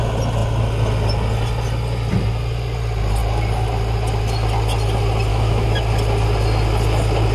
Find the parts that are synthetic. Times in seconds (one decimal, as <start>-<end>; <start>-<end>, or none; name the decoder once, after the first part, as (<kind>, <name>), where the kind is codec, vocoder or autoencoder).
5.3-5.8 (autoencoder, DAC-VAE)